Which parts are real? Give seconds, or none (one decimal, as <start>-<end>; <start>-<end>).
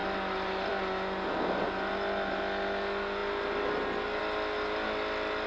0.0-5.5